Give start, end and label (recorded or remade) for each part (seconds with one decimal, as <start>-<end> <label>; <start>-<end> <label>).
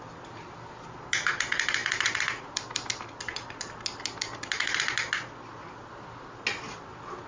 0.0-7.3 recorded